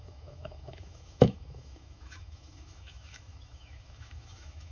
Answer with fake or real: fake